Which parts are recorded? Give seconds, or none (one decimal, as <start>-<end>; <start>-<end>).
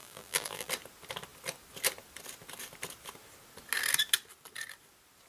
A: 0.7-5.3